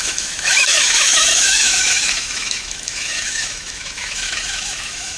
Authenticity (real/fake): fake